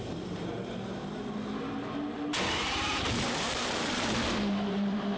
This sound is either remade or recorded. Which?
remade